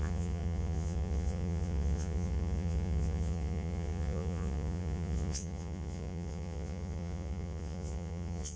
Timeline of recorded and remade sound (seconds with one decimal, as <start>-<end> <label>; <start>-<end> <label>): 0.0-8.6 remade